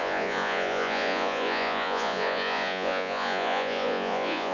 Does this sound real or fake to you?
fake